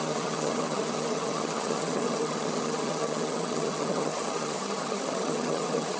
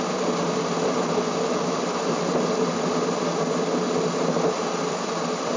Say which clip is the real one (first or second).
second